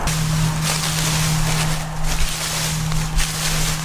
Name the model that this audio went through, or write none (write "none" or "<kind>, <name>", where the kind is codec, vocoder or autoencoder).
none